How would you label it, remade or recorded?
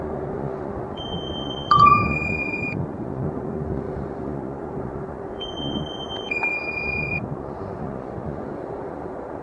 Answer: remade